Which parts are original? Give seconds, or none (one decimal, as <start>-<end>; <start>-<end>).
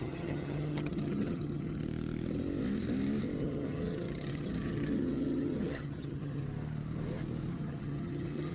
1.8-3.4; 6.4-7.5